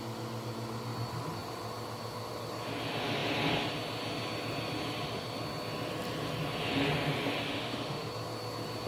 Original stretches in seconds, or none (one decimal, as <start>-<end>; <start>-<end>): 0.0-7.5; 8.1-8.9